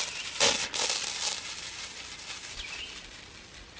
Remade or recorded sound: recorded